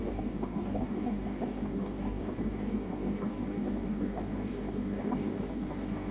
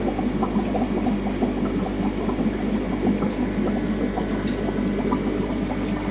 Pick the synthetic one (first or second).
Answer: first